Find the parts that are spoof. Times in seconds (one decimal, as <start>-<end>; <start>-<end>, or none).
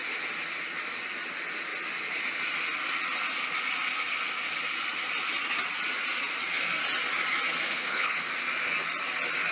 7.7-8.3